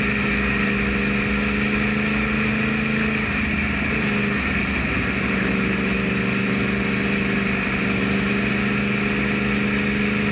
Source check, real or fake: real